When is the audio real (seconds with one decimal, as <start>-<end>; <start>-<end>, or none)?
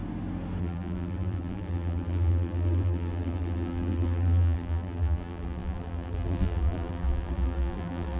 0.0-0.6